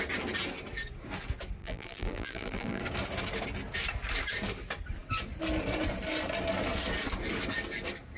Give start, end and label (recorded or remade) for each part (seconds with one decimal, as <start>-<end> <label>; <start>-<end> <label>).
0.0-1.6 recorded; 1.6-2.8 remade; 2.8-8.2 recorded